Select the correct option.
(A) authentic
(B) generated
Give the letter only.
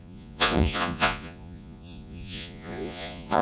B